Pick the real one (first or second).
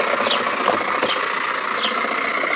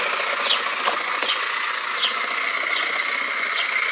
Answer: first